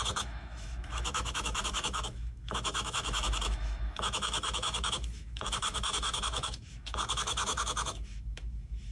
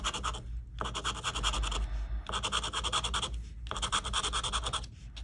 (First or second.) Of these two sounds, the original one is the second